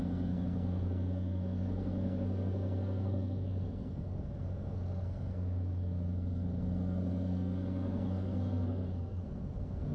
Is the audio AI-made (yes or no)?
yes